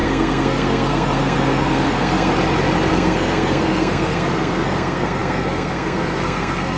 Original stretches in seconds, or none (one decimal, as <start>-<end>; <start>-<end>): 2.3-2.9